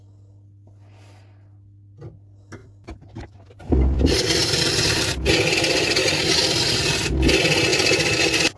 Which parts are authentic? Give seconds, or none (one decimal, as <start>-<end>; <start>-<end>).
0.0-2.6; 4.6-6.4; 7.0-7.7